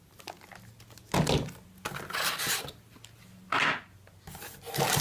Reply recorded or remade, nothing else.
recorded